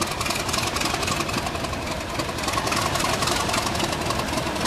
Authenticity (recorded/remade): remade